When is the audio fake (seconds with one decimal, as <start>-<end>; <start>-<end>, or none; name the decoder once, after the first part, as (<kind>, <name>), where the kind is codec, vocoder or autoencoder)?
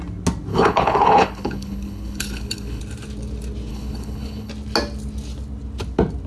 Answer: 0.5-2.8 (codec, HILCodec); 3.7-4.5